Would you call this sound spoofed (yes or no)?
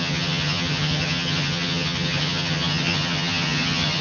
yes